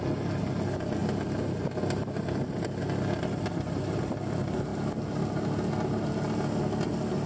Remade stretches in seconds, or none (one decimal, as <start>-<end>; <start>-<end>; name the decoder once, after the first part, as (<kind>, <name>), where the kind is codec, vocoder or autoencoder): none